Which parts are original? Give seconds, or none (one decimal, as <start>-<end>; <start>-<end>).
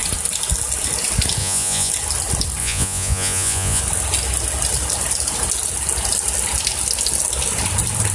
0.0-1.4; 1.9-2.6; 3.8-8.1